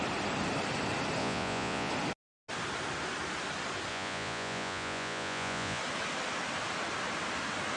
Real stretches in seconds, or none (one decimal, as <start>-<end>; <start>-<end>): 0.0-1.2; 1.9-3.9; 5.8-7.8